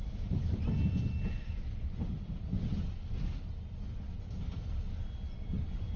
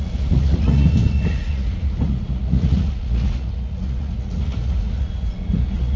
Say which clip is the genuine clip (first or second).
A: first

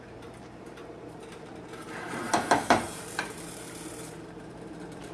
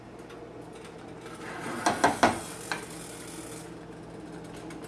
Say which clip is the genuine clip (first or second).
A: second